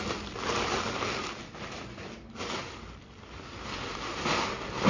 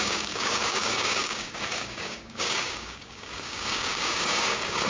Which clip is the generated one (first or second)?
second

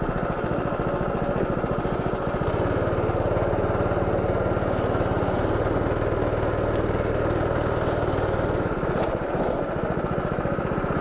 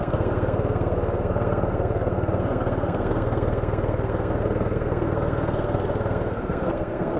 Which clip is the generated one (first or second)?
second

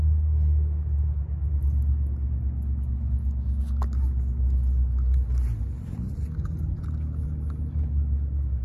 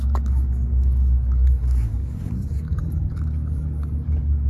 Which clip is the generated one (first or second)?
second